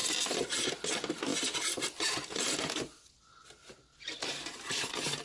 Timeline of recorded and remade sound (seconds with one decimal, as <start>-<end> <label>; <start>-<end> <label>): 0.0-5.2 recorded